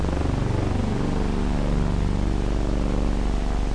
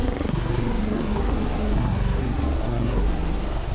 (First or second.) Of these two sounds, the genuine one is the first